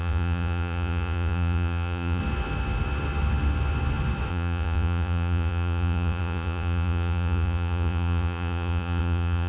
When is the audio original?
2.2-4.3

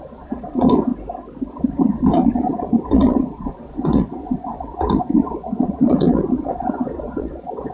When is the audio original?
0.9-1.5

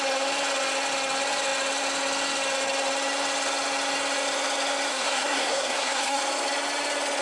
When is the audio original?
0.0-4.9; 6.2-7.2